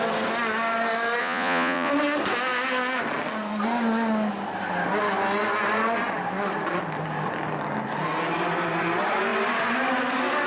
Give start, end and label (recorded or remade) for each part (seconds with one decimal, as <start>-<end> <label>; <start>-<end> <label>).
0.0-1.2 recorded; 1.2-1.9 remade; 1.9-10.5 recorded